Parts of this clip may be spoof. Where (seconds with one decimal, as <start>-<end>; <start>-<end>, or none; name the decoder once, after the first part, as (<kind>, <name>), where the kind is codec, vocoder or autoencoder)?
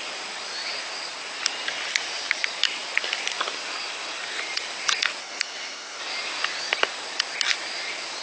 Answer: 5.2-6.0 (codec, SNAC)